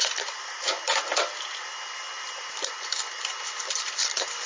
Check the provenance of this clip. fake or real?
real